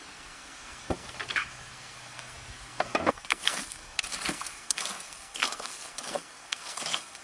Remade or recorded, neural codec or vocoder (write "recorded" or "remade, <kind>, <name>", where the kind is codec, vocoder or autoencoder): remade, codec, SNAC